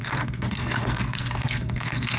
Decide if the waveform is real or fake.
fake